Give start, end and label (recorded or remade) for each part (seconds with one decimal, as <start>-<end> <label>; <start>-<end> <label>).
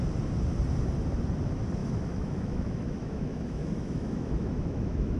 0.0-1.8 recorded; 1.8-5.2 remade